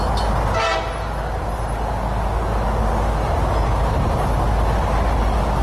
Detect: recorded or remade recorded